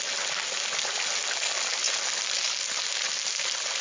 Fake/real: real